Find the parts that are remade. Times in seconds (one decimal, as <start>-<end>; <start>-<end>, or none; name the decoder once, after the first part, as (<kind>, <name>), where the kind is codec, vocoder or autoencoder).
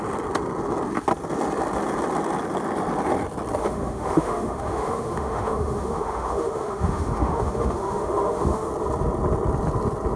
3.6-8.7 (autoencoder, DAC-VAE)